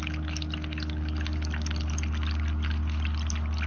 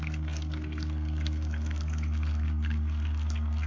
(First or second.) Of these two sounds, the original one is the first